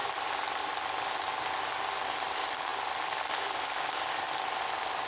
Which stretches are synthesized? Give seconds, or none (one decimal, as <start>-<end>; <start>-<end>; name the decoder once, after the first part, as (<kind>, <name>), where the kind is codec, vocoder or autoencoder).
none